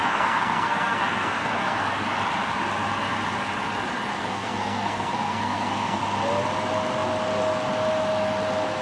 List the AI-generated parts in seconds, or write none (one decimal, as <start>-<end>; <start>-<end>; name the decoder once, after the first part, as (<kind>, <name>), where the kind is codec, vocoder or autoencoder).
0.0-2.1 (codec, SNAC); 4.2-6.0